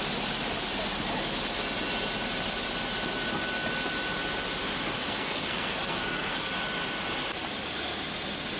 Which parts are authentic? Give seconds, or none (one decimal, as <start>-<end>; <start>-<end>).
0.0-5.0; 6.5-8.6